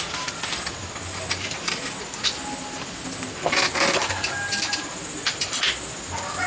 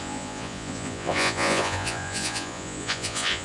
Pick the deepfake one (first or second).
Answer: second